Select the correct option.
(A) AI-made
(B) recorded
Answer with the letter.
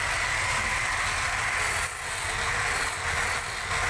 B